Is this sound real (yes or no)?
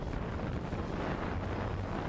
yes